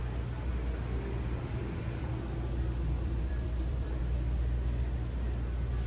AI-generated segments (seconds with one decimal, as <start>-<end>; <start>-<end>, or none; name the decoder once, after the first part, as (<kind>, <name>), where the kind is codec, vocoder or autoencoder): 0.5-4.0 (vocoder, BigVGAN v2)